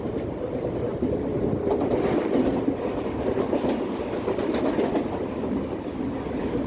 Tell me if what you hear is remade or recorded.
recorded